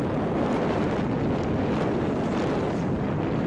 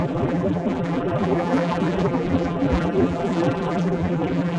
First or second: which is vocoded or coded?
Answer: second